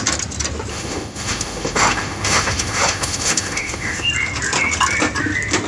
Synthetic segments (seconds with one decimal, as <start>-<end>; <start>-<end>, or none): 0.7-4.1